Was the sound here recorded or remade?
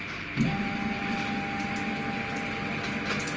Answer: recorded